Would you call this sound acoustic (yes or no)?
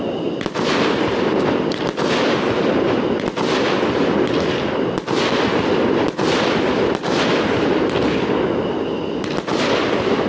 yes